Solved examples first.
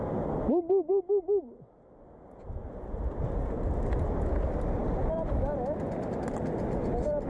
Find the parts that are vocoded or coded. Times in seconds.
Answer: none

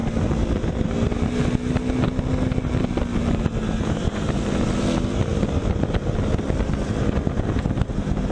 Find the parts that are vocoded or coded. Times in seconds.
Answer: 0.0-0.7 (vocoder, BigVGAN v2)

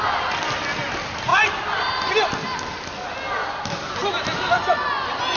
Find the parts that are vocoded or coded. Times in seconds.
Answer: none

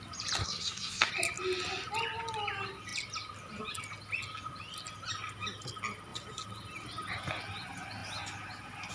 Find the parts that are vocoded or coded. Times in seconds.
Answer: 0.4-1.1 (codec, SNAC)